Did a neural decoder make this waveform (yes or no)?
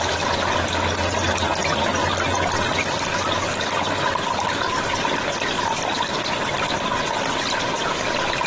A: no